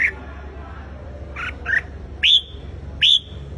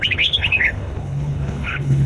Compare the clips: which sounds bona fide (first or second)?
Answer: first